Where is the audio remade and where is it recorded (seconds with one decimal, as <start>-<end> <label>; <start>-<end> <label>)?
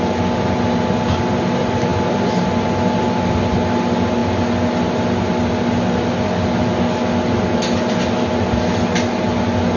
0.0-9.8 recorded